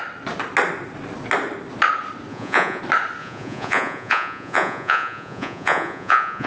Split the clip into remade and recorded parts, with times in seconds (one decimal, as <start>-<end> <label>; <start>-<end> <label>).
0.0-2.3 recorded; 2.3-2.8 remade; 2.8-3.2 recorded; 3.2-6.5 remade